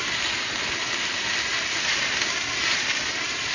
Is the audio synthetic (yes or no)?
no